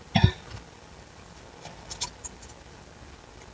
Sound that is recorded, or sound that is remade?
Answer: recorded